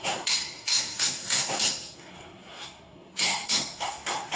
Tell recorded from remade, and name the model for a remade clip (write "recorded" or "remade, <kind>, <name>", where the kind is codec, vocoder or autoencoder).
remade, codec, SNAC